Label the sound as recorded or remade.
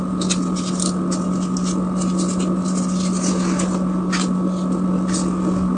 recorded